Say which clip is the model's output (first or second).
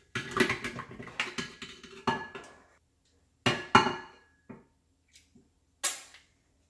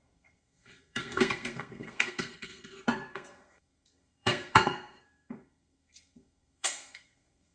second